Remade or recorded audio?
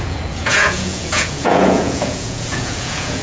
remade